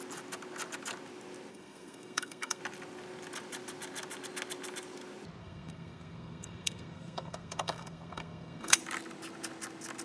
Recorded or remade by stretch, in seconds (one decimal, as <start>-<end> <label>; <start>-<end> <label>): 0.0-1.5 recorded; 1.5-2.6 remade; 2.6-5.4 recorded; 5.4-8.8 remade; 8.8-10.0 recorded